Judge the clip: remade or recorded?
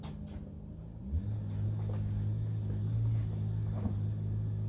recorded